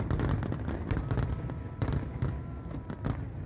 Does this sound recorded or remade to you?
recorded